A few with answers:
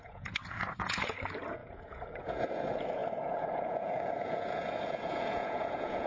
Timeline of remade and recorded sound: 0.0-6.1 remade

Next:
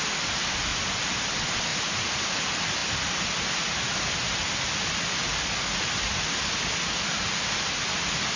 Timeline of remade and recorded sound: 0.0-0.7 recorded; 0.7-1.2 remade; 1.2-1.7 recorded; 1.7-2.3 remade; 2.3-8.4 recorded

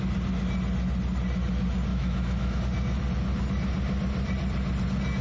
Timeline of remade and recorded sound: 0.0-1.9 recorded; 1.9-2.6 remade; 2.6-5.2 recorded

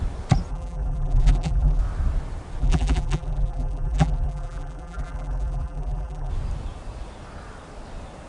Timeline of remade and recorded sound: 0.0-0.5 recorded; 0.5-1.8 remade; 1.8-2.6 recorded; 2.6-6.3 remade; 6.3-8.3 recorded

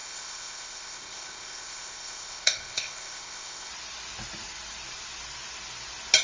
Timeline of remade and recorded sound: 0.0-3.7 remade; 3.7-6.2 recorded